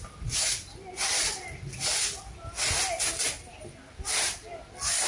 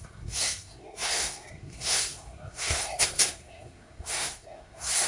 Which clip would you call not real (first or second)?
second